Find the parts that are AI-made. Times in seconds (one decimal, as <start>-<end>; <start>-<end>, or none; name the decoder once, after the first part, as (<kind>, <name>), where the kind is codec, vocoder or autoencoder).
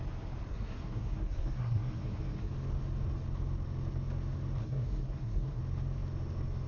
0.5-2.5 (codec, SNAC); 4.6-5.6